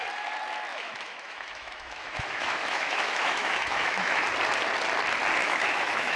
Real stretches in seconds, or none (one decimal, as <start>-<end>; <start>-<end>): 0.0-0.7; 4.3-5.4